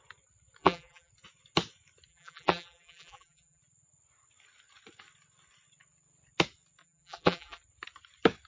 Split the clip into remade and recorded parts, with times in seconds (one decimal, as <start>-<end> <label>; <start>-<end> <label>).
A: 0.0-0.6 recorded; 0.6-1.1 remade; 1.1-2.1 recorded; 2.1-3.6 remade; 3.6-6.8 recorded; 6.8-7.6 remade; 7.6-8.5 recorded